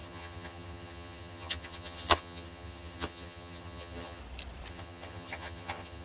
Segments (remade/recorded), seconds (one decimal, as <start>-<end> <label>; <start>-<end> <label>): 0.0-4.2 remade; 4.2-4.7 recorded; 4.7-6.0 remade